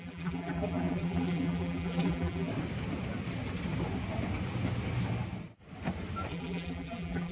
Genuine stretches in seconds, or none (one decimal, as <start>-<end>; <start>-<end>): 2.5-6.3